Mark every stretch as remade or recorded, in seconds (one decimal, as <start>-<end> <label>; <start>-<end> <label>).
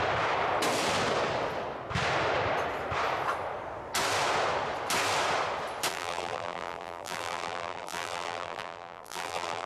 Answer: 0.0-5.9 recorded; 5.9-9.7 remade